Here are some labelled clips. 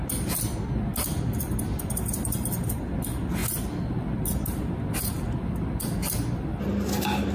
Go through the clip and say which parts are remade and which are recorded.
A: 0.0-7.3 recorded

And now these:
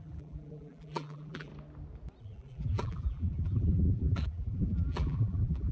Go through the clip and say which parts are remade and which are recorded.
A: 0.0-1.5 remade; 1.5-2.2 recorded; 2.2-5.7 remade

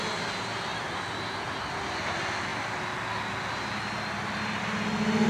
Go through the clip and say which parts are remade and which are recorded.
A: 0.0-5.3 recorded

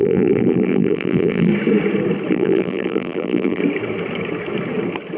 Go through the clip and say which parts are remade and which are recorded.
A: 0.0-1.5 remade; 1.5-2.3 recorded; 2.3-3.6 remade; 3.6-5.2 recorded